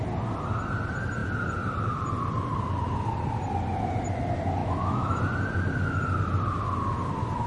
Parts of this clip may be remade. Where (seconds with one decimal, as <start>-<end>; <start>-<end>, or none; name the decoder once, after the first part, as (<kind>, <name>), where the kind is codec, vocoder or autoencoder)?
4.6-5.2 (autoencoder, DAC-VAE)